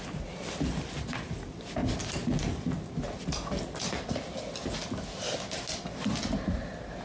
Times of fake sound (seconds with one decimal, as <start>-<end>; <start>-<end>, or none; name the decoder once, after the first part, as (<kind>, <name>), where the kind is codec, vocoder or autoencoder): none